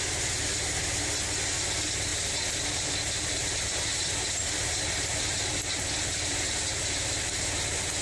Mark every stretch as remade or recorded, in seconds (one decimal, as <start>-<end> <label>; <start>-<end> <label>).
0.0-2.1 recorded; 2.1-6.8 remade; 6.8-8.0 recorded

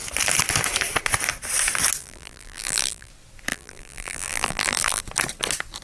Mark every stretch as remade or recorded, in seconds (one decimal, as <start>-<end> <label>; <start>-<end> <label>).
0.0-2.0 recorded; 2.0-3.1 remade; 3.1-3.5 recorded; 3.5-5.0 remade; 5.0-5.8 recorded